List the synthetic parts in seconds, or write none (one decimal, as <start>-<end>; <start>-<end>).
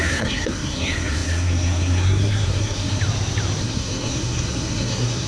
0.0-3.0; 3.6-5.3